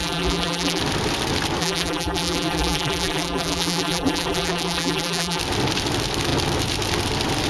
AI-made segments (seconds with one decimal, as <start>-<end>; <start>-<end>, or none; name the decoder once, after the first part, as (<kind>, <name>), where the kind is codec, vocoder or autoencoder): 0.0-0.8 (vocoder, BigVGAN v2); 1.6-5.4